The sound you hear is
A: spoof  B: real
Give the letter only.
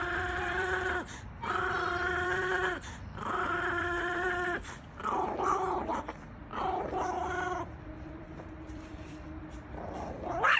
A